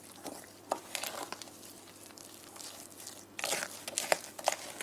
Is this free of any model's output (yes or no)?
yes